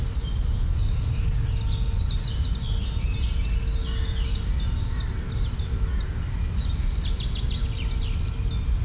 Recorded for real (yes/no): yes